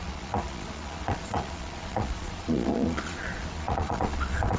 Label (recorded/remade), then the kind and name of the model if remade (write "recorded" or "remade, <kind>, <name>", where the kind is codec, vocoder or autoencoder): remade, vocoder, Vocos